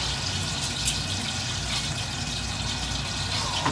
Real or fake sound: real